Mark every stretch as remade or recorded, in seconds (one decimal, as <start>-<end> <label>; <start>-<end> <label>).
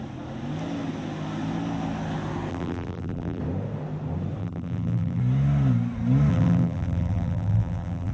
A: 0.0-2.5 recorded; 2.5-3.4 remade; 3.4-4.4 recorded; 4.4-5.2 remade; 5.2-6.3 recorded; 6.3-8.1 remade